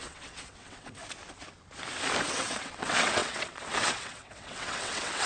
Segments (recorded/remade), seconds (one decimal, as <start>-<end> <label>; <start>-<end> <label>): 0.0-1.0 remade; 1.0-2.2 recorded; 2.2-5.3 remade